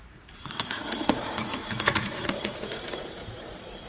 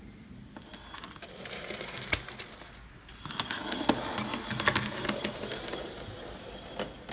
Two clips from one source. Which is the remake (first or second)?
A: first